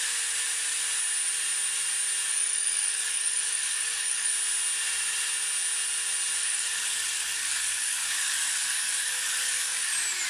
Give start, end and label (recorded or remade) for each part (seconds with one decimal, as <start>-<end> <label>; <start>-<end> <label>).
0.0-2.3 recorded; 2.3-4.3 remade; 4.3-6.4 recorded; 6.4-9.9 remade; 9.9-10.3 recorded